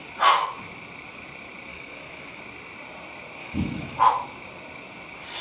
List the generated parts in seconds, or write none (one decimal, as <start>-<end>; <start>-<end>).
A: 1.7-2.4; 3.4-4.0